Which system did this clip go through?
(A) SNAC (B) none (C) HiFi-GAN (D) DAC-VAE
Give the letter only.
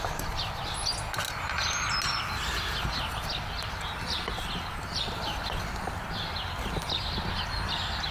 B